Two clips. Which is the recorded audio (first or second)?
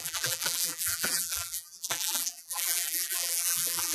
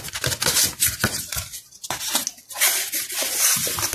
second